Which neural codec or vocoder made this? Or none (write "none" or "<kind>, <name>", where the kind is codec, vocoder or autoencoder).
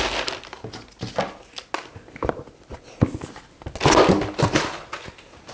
none